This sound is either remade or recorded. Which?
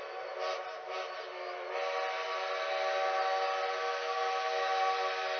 recorded